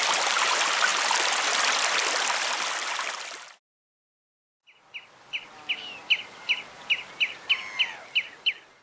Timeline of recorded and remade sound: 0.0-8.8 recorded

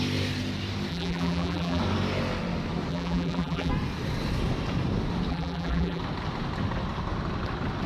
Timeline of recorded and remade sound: 0.0-0.9 recorded; 0.9-1.8 remade; 1.8-2.9 recorded; 2.9-3.7 remade; 3.7-5.3 recorded; 5.3-6.0 remade; 6.0-7.9 recorded

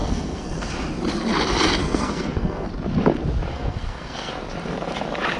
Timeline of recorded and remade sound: 0.0-0.7 remade; 0.7-1.8 recorded; 1.8-2.7 remade; 2.7-3.5 recorded; 3.5-4.3 remade; 4.3-5.4 recorded

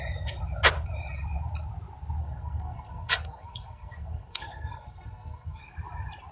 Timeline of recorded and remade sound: 0.0-2.2 recorded; 2.2-5.6 remade; 5.6-6.3 recorded

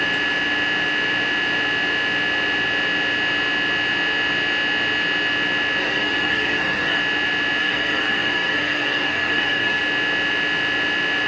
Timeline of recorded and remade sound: 0.0-5.8 recorded; 5.8-7.0 remade; 7.0-7.6 recorded; 7.6-9.8 remade; 9.8-11.3 recorded

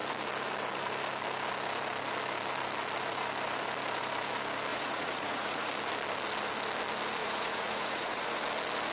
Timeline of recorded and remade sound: 0.0-4.7 recorded; 4.7-5.7 remade; 5.7-7.2 recorded; 7.2-8.4 remade; 8.4-8.9 recorded